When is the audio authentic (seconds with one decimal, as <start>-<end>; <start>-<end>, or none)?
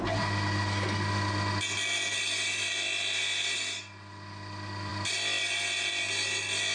0.0-6.7